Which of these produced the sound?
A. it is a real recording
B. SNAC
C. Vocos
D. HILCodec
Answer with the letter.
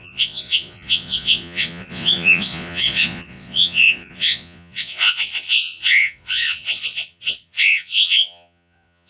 C